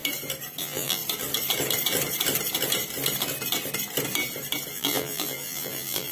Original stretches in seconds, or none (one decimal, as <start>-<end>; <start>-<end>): 0.0-0.6; 1.0-4.7